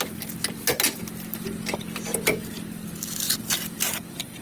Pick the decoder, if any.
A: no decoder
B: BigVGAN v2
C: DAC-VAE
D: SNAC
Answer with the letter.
A